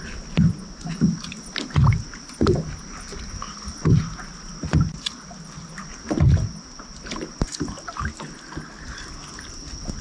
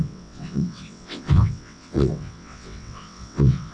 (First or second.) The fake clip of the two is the second